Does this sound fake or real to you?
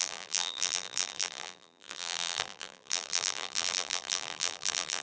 fake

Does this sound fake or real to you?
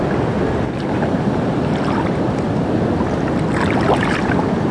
real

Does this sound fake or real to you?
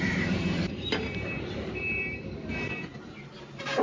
fake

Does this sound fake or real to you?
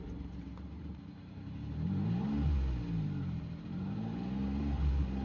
fake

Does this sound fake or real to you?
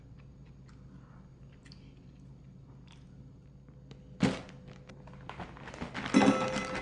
real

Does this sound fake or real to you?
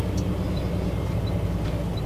real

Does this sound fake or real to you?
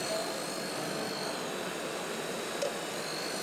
real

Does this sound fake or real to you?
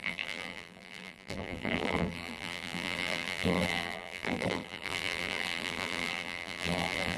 fake